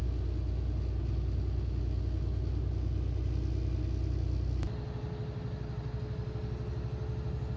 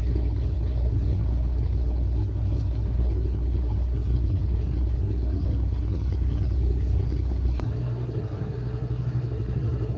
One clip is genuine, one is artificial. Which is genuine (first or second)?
first